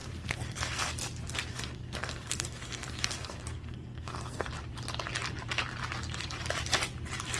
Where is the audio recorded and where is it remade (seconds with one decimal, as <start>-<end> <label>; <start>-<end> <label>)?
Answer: 0.0-0.9 remade; 0.9-1.5 recorded; 1.5-4.5 remade; 4.5-7.4 recorded